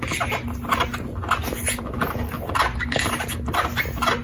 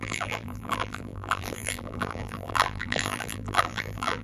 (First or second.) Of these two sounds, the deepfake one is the second